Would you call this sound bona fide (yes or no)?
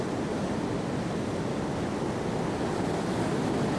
yes